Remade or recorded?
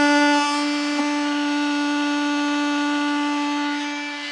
recorded